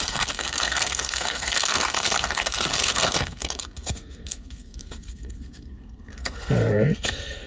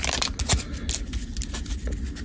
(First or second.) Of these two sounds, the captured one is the second